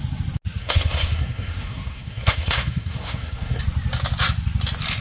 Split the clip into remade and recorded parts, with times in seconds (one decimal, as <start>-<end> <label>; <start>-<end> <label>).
0.0-0.6 recorded; 0.6-3.6 remade; 3.6-5.0 recorded